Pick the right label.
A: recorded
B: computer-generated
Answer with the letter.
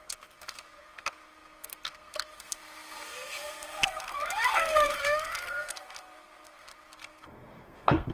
B